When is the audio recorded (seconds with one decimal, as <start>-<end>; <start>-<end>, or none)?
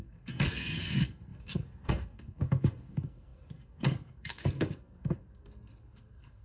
none